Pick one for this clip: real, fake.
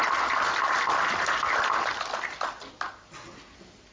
real